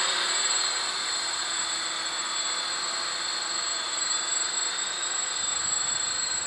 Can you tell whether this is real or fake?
real